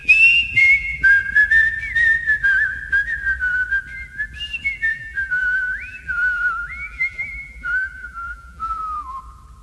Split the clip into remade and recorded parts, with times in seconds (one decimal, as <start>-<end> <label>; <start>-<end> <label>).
0.0-1.2 remade; 1.2-4.9 recorded; 4.9-9.2 remade; 9.2-9.6 recorded